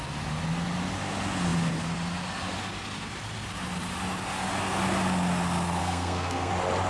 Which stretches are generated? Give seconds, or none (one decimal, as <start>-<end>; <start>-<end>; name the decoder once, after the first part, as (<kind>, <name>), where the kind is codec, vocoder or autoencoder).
5.8-6.5 (codec, SNAC)